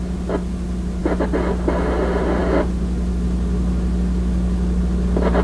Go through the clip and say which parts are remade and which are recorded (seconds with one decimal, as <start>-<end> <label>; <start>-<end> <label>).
0.0-5.4 recorded